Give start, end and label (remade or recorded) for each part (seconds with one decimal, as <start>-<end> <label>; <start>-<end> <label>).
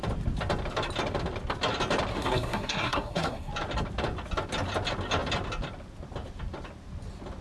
0.0-2.1 recorded; 2.1-3.5 remade; 3.5-7.4 recorded